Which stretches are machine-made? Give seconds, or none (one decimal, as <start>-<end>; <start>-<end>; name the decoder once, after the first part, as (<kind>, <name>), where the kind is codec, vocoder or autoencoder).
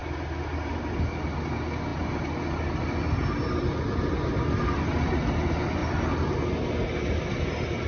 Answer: none